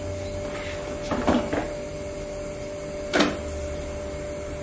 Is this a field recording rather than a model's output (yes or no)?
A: yes